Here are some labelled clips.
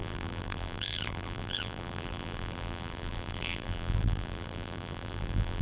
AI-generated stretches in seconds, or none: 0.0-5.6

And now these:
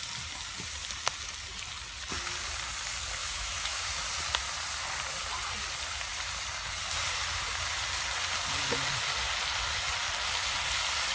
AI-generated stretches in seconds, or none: 3.2-3.9

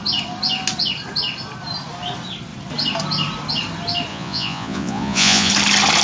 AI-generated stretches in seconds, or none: 4.1-5.5